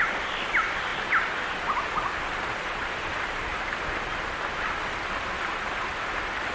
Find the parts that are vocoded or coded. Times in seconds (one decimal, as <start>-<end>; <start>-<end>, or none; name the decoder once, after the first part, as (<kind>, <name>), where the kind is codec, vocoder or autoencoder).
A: none